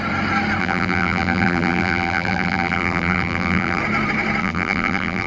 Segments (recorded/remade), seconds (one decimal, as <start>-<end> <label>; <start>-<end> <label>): 0.0-0.6 recorded; 0.6-3.8 remade; 3.8-4.4 recorded; 4.4-5.3 remade